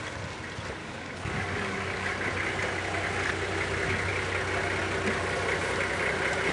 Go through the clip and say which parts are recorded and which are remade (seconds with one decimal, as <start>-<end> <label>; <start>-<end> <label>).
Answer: 0.0-0.8 recorded; 0.8-2.1 remade; 2.1-6.5 recorded